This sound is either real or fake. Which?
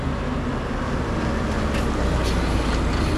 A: real